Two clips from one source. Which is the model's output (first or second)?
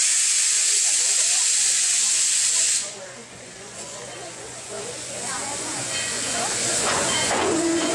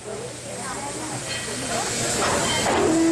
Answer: first